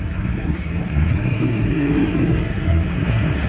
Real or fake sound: fake